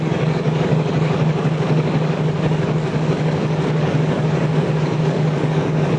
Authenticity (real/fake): fake